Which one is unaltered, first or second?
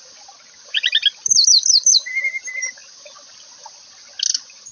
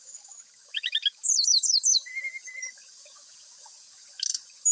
first